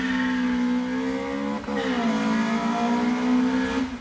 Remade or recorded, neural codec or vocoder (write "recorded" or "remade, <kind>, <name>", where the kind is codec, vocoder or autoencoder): recorded